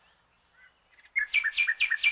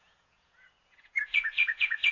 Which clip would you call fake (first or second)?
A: second